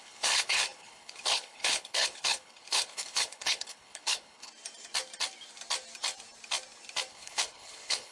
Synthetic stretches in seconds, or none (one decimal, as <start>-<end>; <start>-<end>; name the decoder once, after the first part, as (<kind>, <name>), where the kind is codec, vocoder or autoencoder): 0.0-4.5 (codec, HILCodec); 7.1-8.1

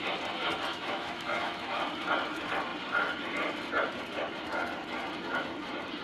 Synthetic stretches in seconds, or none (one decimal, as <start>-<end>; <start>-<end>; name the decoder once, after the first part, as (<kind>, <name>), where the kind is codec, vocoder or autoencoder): 0.7-1.8 (autoencoder, DAC-VAE)

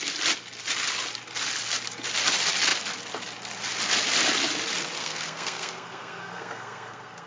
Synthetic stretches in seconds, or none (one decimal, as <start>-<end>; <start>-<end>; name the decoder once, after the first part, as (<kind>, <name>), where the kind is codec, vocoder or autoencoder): 5.0-7.3 (codec, SNAC)

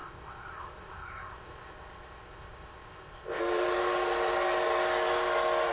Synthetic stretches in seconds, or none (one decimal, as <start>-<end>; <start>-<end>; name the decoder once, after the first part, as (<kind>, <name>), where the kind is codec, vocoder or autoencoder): 0.0-3.4 (codec, ZipCodec)

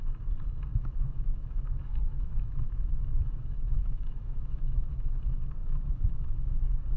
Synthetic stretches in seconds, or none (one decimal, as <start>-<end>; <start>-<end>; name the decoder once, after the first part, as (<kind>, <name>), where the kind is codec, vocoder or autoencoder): 0.7-4.9 (autoencoder, DAC-VAE); 5.6-6.3

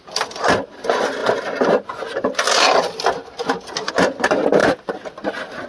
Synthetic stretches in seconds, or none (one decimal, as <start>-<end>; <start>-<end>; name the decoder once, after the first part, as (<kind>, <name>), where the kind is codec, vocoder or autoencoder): none

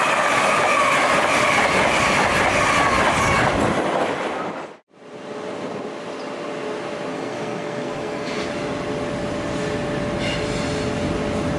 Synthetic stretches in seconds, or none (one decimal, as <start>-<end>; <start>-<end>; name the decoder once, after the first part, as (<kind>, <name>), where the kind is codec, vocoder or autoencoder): 7.1-8.5 (codec, SNAC)